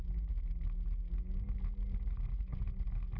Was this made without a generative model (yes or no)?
yes